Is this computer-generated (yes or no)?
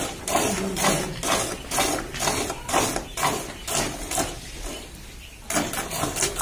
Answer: no